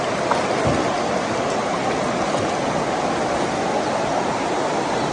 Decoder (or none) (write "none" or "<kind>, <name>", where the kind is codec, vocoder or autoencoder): none